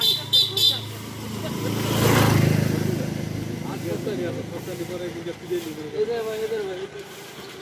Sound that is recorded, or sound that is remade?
recorded